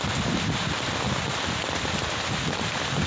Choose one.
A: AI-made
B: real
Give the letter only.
B